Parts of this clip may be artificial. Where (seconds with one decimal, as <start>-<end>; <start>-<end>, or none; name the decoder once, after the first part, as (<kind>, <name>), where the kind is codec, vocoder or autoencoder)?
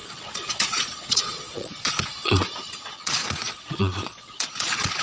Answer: 0.0-5.0 (vocoder, Vocos)